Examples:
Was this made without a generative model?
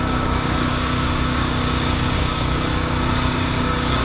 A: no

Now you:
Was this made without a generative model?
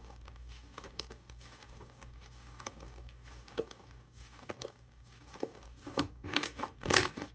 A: no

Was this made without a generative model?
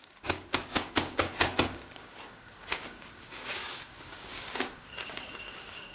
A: no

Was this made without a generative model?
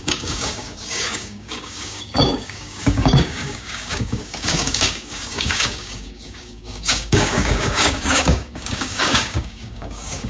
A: no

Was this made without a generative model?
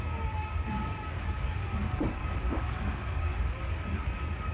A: no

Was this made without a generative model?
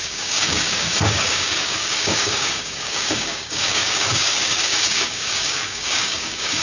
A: no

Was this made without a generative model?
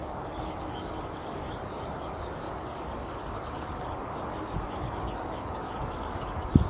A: no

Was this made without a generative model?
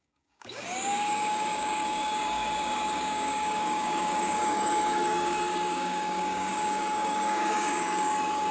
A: no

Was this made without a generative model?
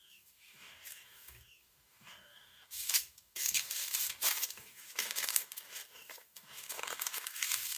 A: no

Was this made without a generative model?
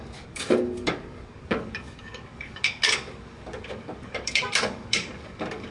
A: no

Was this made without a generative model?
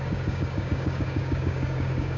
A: no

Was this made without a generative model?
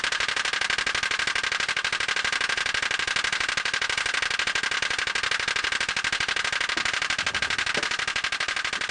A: yes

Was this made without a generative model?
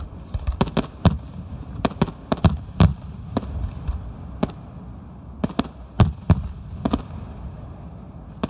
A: yes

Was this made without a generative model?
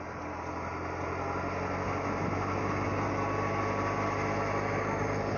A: yes